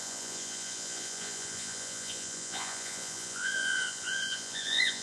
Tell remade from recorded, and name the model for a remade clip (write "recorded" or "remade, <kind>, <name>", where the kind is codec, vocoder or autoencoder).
remade, vocoder, Vocos